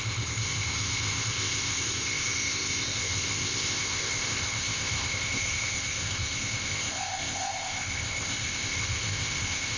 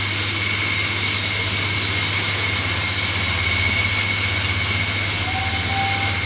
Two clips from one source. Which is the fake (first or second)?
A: first